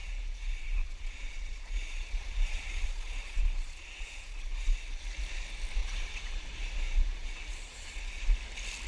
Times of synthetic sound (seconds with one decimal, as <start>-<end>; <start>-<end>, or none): 0.0-5.0; 5.8-8.2